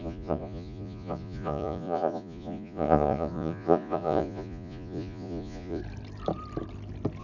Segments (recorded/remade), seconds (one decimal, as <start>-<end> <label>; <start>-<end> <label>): 0.0-5.8 remade; 5.8-7.2 recorded